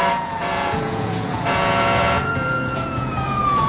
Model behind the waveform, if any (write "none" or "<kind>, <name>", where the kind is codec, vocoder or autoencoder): vocoder, Vocos